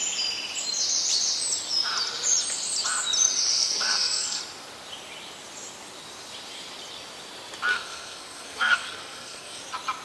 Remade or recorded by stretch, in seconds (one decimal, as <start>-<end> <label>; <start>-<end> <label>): 0.0-3.5 recorded; 3.5-4.4 remade; 4.4-7.7 recorded; 7.7-9.6 remade; 9.6-10.0 recorded